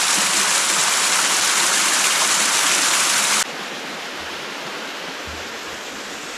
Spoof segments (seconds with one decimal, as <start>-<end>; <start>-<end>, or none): none